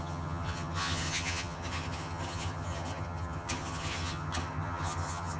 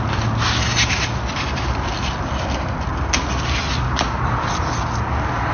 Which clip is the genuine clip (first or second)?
second